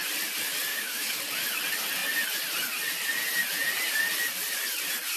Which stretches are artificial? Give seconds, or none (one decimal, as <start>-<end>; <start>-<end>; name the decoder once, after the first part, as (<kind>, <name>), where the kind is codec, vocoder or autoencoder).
0.7-1.2 (autoencoder, DAC-VAE)